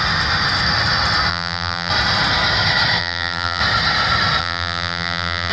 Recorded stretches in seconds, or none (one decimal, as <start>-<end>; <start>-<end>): 0.0-1.3; 1.9-3.0; 3.6-4.4